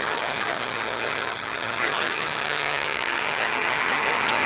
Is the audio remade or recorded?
remade